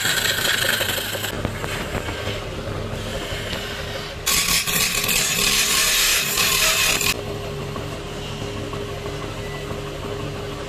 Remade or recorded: recorded